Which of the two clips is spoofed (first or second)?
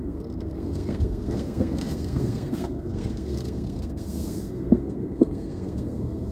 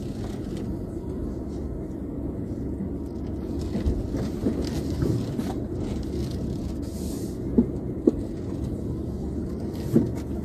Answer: first